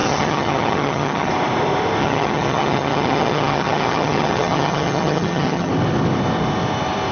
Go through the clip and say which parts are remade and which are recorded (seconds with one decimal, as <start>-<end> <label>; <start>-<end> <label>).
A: 0.0-1.3 remade; 1.3-2.0 recorded; 2.0-5.7 remade; 5.7-7.1 recorded